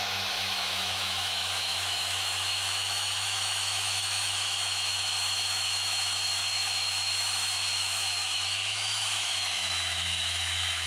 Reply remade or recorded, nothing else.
remade